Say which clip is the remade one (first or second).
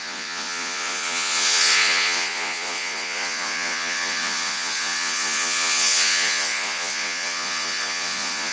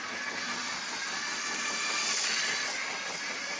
first